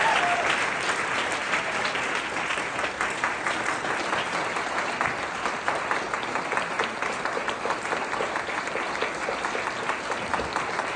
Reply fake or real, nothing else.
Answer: real